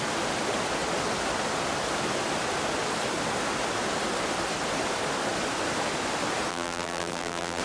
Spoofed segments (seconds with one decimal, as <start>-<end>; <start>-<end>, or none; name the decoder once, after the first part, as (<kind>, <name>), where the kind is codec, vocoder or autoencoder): 6.5-7.6 (vocoder, BigVGAN v2)